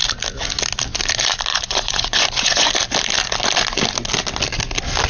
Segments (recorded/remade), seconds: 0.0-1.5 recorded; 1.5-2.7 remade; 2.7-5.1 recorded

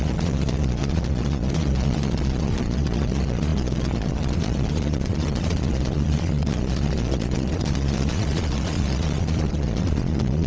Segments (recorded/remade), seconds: 0.0-10.5 remade

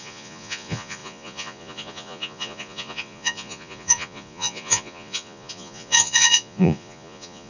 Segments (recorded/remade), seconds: 0.0-7.5 remade